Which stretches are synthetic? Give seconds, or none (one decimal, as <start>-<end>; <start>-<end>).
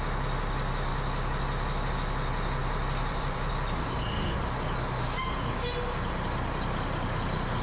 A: 2.6-3.5